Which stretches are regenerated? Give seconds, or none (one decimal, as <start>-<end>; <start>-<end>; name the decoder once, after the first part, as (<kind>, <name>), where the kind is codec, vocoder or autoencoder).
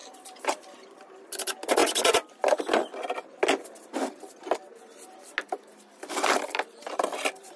0.0-1.8 (vocoder, BigVGAN v2); 5.8-7.6